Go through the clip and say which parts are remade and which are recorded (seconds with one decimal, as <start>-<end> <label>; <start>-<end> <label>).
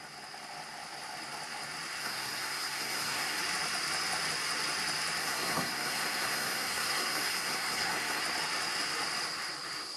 0.0-2.0 recorded; 2.0-3.4 remade; 3.4-5.2 recorded; 5.2-8.2 remade; 8.2-10.0 recorded